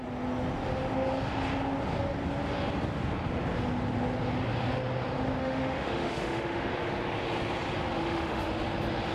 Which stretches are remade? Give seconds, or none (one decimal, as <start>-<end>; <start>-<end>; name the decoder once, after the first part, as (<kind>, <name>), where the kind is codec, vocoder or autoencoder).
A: 5.4-6.7 (autoencoder, DAC-VAE); 8.0-8.5